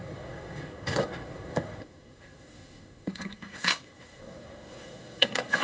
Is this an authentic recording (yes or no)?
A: no